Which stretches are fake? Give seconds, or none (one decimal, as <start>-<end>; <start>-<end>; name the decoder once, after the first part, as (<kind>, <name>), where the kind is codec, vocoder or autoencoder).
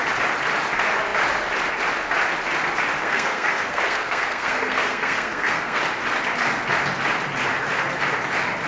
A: 3.0-5.8 (codec, SNAC)